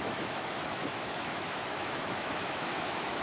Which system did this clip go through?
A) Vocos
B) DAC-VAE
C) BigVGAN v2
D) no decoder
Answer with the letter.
B